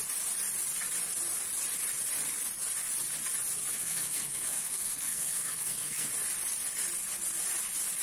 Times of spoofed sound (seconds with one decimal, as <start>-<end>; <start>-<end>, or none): 3.7-6.1